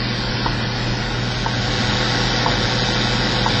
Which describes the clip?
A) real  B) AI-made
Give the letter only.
A